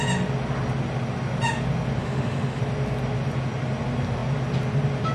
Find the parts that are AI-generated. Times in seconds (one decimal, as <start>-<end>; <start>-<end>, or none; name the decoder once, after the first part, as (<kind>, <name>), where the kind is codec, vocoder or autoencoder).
2.0-2.6 (autoencoder, DAC-VAE)